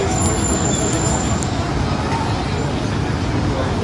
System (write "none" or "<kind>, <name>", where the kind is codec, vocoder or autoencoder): none